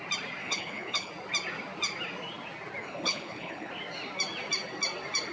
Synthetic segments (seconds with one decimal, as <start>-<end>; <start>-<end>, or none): 0.4-1.1; 2.8-3.7